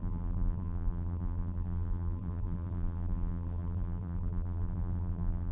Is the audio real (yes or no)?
no